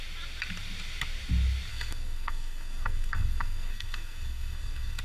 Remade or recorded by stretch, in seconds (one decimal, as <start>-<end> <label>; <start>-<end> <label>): 0.0-1.7 recorded; 1.7-5.0 remade